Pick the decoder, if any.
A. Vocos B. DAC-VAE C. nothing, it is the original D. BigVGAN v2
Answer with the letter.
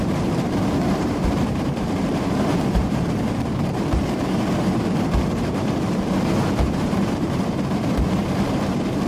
D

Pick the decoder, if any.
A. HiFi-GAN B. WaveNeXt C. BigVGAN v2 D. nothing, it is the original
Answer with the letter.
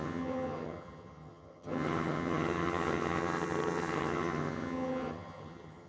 A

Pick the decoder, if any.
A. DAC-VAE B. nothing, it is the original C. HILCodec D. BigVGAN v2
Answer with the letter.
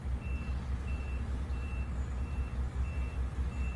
B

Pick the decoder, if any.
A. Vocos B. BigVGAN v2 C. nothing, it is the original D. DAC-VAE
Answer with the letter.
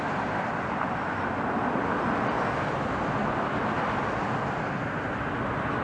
C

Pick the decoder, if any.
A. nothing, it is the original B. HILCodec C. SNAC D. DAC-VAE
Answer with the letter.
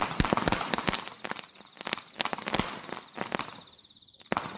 A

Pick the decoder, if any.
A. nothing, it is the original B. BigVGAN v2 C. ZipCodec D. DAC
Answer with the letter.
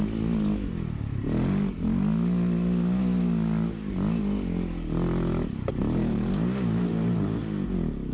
A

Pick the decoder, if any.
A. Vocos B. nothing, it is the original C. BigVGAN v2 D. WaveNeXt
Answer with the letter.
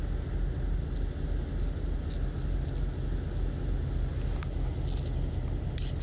B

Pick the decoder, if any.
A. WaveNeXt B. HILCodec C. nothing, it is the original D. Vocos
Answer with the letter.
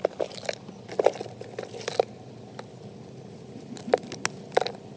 C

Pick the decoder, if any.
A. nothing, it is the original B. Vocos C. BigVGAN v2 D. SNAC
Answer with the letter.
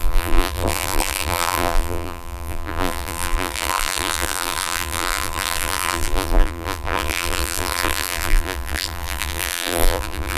C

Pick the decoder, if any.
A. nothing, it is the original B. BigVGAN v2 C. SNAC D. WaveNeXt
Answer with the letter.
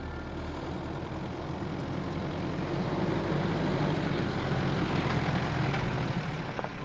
A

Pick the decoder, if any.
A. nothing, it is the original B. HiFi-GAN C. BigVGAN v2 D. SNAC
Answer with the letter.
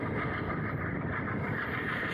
C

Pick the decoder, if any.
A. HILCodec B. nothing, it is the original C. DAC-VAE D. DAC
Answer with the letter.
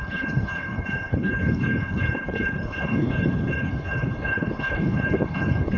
A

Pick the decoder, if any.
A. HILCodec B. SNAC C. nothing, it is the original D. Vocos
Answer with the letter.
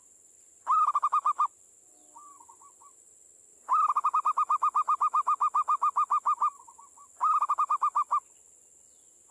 C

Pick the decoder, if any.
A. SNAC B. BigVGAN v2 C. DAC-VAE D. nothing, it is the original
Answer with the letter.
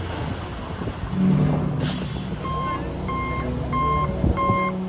D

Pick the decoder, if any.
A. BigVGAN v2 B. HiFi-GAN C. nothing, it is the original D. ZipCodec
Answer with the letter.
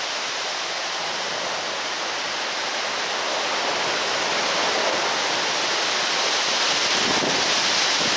C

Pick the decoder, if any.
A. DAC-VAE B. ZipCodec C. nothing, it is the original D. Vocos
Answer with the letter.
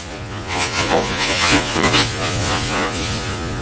D